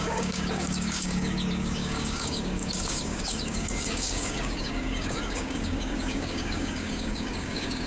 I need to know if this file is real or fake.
fake